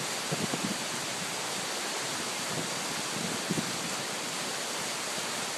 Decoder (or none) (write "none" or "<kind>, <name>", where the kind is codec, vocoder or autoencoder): none